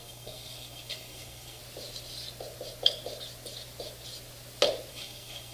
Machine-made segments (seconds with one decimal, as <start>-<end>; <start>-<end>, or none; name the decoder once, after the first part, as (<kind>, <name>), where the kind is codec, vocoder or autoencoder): 0.0-1.6 (codec, SNAC); 4.9-5.5